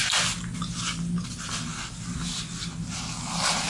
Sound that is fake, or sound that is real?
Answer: real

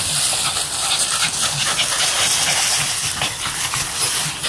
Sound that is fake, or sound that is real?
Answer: real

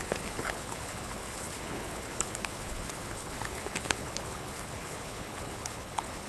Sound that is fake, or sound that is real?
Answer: fake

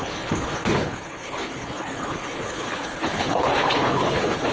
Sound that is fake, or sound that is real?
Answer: fake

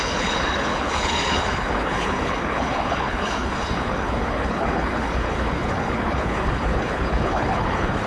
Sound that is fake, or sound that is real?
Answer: fake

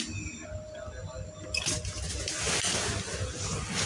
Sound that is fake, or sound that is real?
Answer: real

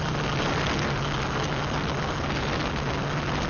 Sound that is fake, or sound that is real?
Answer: real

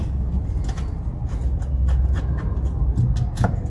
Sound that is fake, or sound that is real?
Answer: real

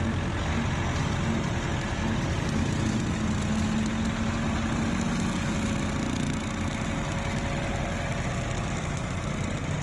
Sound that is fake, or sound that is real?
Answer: real